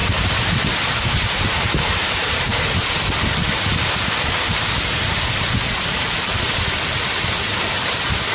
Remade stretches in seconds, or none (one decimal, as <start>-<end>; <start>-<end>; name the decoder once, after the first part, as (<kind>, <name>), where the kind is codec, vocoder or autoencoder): 1.6-2.5 (vocoder, BigVGAN v2); 5.8-6.3; 7.7-8.3